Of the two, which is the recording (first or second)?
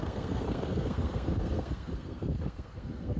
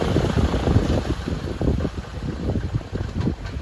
second